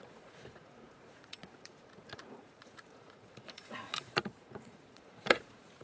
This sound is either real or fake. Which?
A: fake